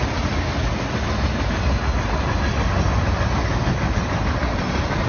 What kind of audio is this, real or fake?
real